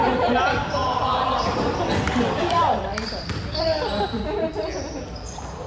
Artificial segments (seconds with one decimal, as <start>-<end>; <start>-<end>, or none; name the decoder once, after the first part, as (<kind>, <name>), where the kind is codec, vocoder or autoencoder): 0.8-3.6 (vocoder, BigVGAN v2)